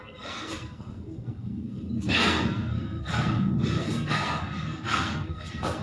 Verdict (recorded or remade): remade